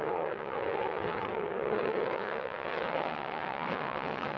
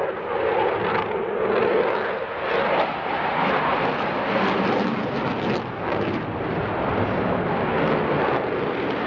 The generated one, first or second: first